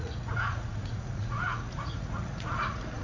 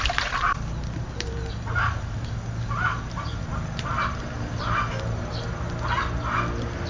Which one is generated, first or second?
first